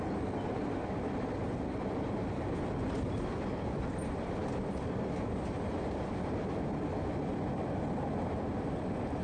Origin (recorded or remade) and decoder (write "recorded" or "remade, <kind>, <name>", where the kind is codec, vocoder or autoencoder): recorded